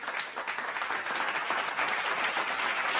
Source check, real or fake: real